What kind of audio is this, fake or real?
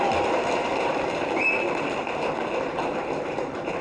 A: real